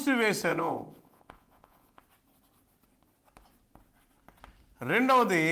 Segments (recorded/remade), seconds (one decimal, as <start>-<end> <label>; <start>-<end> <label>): 0.0-0.5 recorded; 0.5-2.0 remade; 2.0-5.5 recorded